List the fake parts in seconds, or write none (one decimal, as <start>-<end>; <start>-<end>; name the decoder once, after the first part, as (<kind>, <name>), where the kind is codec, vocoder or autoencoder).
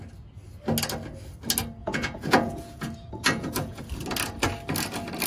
1.8-3.8 (vocoder, Vocos)